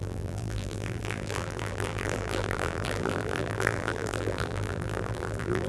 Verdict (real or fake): fake